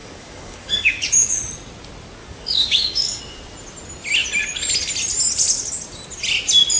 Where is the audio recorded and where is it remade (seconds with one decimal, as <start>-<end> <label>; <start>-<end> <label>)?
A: 0.0-1.4 remade; 1.4-2.2 recorded; 2.2-3.2 remade; 3.2-6.8 recorded